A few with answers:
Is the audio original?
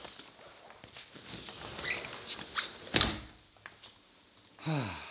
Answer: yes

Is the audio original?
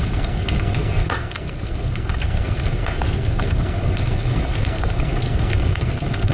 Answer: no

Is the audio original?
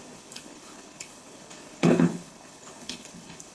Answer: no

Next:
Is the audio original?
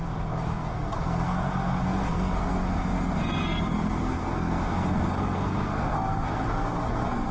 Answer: no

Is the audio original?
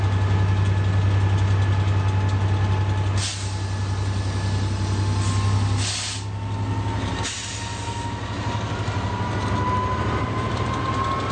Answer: yes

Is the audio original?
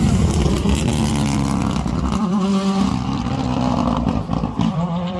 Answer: no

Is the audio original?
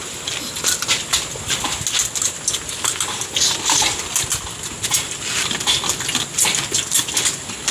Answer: yes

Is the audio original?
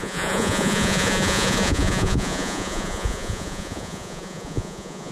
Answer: no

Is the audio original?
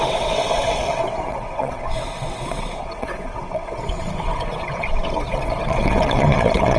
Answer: no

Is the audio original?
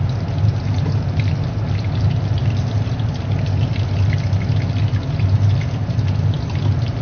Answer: yes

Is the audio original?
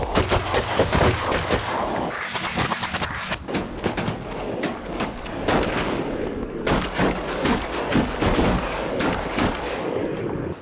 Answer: no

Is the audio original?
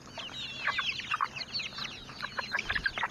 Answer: yes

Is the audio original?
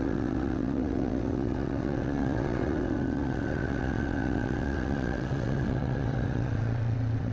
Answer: no